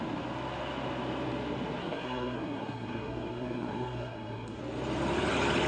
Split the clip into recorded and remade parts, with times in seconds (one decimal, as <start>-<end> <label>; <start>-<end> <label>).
0.0-1.8 recorded; 1.8-4.6 remade; 4.6-5.7 recorded